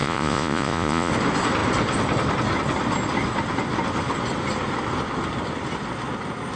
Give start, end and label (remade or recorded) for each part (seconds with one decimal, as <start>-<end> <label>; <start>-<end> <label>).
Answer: 0.0-1.1 remade; 1.1-6.6 recorded